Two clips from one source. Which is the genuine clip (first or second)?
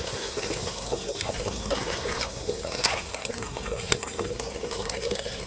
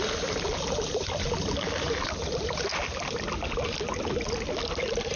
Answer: second